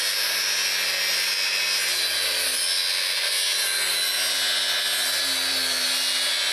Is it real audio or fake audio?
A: real